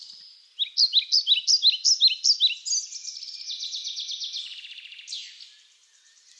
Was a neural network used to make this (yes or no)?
no